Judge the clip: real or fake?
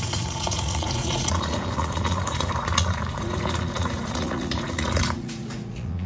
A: fake